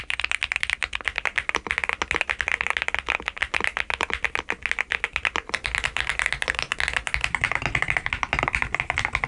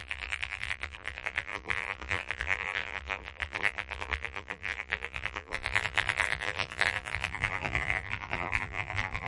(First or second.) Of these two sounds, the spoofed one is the second